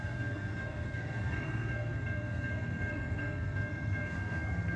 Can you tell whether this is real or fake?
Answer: fake